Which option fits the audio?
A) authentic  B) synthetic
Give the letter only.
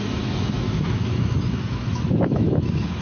B